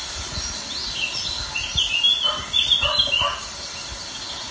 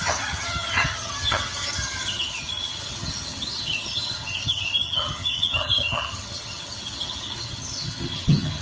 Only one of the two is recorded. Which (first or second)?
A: first